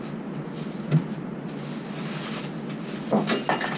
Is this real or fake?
real